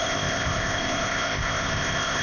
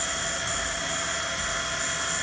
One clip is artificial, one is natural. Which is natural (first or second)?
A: second